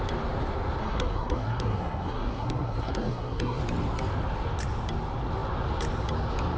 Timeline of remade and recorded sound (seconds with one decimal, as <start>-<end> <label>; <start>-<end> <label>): 0.0-0.8 recorded; 0.8-3.6 remade; 3.6-6.6 recorded

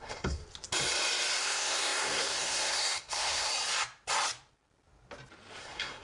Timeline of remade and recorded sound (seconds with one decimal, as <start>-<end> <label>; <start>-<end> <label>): 0.0-0.4 remade; 0.4-1.4 recorded; 1.4-3.5 remade; 3.5-5.6 recorded; 5.6-6.0 remade

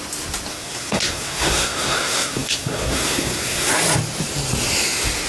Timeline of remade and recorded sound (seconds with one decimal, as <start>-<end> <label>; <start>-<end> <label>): 0.0-0.5 recorded; 0.5-3.7 remade; 3.7-5.3 recorded

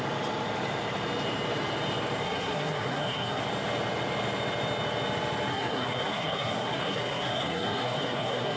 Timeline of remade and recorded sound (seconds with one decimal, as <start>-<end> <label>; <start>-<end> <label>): 0.0-2.2 recorded; 2.2-3.4 remade; 3.4-5.5 recorded; 5.5-8.6 remade

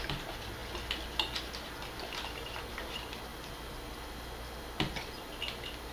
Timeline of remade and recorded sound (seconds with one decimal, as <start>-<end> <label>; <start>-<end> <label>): 0.0-5.9 recorded

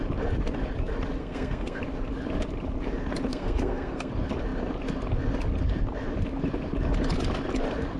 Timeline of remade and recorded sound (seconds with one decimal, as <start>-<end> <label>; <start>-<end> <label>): 0.0-1.2 recorded; 1.2-1.8 remade; 1.8-3.3 recorded; 3.3-4.1 remade; 4.1-8.0 recorded

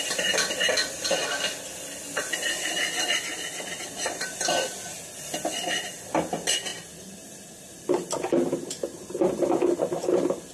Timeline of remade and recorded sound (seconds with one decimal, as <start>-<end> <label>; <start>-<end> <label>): 0.0-10.5 recorded